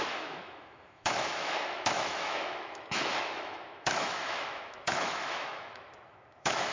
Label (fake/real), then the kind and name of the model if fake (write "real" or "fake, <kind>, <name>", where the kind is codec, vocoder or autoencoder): fake, autoencoder, DAC-VAE